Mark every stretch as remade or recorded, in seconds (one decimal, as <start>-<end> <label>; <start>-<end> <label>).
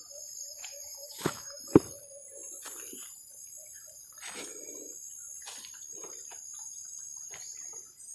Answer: 0.0-0.4 recorded; 0.4-1.6 remade; 1.6-8.1 recorded